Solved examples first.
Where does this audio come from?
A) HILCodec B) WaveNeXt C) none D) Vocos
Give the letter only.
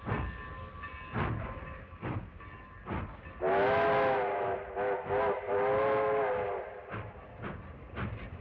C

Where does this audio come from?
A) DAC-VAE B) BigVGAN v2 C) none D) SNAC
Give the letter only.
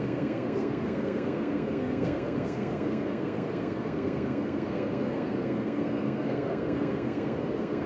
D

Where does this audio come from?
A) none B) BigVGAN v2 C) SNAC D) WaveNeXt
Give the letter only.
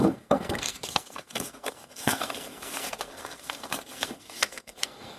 C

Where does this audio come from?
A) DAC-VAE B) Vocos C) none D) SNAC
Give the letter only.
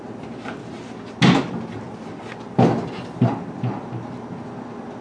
C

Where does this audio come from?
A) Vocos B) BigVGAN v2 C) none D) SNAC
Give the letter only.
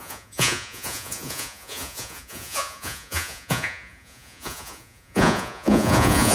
A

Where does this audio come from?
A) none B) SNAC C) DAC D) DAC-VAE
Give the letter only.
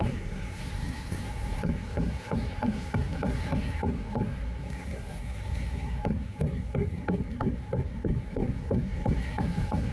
B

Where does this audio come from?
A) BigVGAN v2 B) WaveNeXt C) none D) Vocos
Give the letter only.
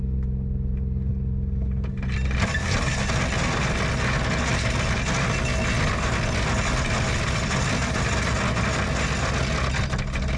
C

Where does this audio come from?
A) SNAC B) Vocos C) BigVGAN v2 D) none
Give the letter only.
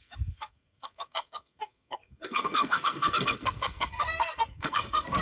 A